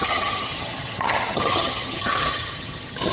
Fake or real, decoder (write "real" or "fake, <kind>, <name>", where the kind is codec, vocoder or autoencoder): fake, vocoder, HiFi-GAN